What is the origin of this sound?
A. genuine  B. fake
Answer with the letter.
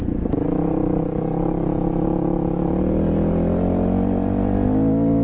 A